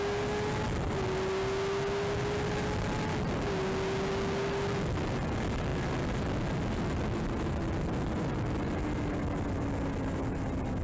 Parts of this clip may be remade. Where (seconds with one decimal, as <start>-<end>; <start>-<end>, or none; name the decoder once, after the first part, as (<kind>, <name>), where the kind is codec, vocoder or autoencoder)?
none